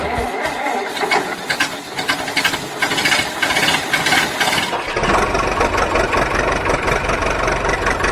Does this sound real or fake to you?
real